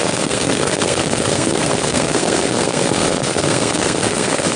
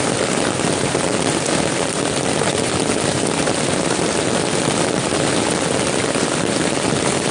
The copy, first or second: first